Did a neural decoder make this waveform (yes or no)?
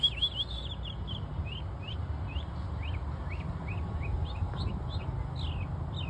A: no